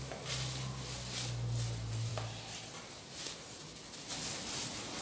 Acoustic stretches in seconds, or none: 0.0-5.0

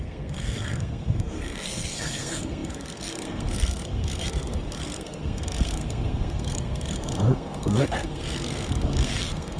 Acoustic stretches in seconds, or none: none

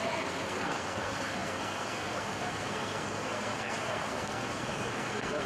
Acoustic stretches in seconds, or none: none

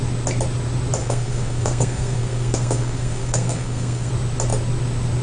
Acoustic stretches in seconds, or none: 0.0-1.0; 4.1-5.2

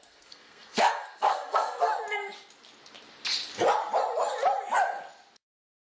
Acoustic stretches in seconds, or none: 1.9-5.8

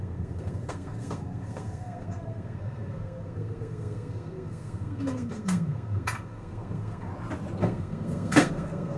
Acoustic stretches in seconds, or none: 7.1-7.6

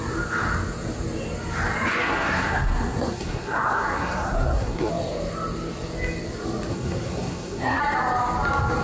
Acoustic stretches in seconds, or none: 0.0-1.9; 4.9-6.7; 7.8-8.8

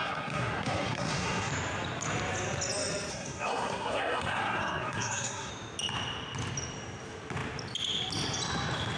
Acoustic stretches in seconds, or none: 1.5-3.1; 5.5-9.0